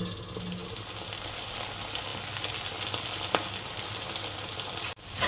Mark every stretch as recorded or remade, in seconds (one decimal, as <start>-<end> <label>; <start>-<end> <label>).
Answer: 0.0-5.3 recorded